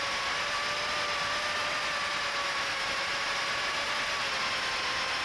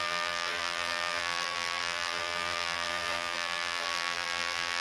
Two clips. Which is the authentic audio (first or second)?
first